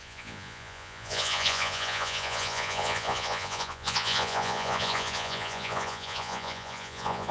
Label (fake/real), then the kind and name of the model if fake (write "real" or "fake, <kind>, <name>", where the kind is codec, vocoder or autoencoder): fake, vocoder, Vocos